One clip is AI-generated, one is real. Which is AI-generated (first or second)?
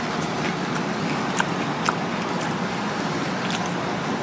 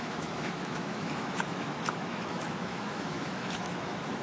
second